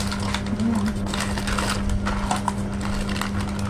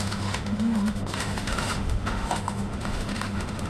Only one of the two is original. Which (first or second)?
first